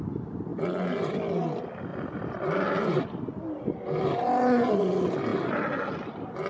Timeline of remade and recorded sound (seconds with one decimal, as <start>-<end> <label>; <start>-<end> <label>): 0.0-6.5 recorded